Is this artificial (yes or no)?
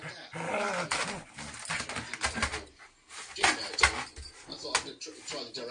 no